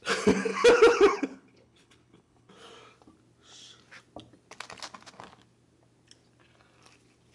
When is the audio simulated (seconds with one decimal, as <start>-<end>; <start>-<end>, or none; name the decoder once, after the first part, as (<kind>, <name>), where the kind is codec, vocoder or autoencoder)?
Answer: 0.5-2.5 (codec, HILCodec)